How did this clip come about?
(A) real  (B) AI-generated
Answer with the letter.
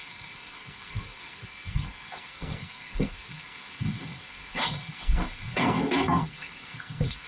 B